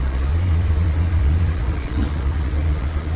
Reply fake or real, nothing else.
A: fake